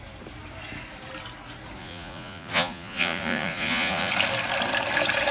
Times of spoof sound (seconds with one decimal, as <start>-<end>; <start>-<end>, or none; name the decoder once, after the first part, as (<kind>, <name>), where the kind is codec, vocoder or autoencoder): 1.8-4.1 (vocoder, Vocos)